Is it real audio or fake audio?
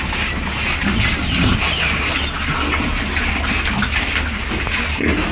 real